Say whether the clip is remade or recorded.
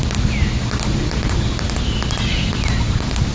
recorded